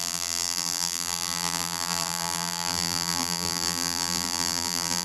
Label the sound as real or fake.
fake